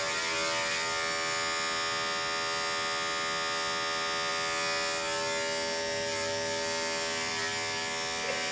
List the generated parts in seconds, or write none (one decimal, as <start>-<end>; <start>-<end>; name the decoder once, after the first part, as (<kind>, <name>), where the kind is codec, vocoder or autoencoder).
none

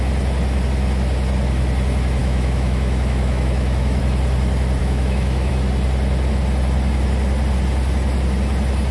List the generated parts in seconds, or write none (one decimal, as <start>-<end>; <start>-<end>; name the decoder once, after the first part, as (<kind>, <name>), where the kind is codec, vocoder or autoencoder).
2.2-4.0 (autoencoder, DAC-VAE); 4.8-5.5

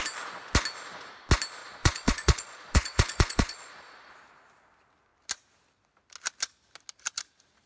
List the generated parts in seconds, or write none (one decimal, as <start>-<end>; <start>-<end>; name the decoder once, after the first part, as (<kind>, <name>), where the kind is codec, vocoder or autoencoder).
1.6-4.1 (vocoder, Vocos)

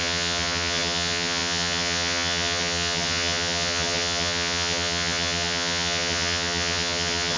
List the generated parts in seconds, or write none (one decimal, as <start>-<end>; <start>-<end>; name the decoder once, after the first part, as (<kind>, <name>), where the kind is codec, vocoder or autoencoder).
0.0-7.4 (vocoder, HiFi-GAN)